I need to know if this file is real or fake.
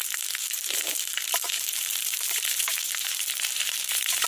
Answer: fake